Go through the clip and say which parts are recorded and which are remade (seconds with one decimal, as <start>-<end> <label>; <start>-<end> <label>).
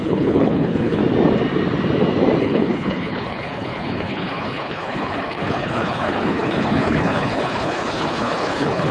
0.0-1.0 remade; 1.0-2.4 recorded; 2.4-8.9 remade